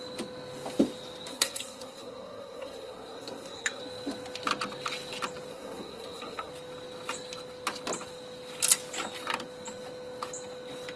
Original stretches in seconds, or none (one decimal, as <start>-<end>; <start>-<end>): 0.0-1.3; 3.8-5.5; 6.5-11.0